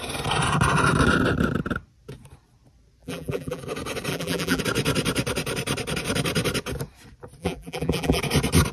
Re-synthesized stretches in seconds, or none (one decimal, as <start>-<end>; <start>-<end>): 3.0-3.6; 4.1-4.6; 7.4-8.2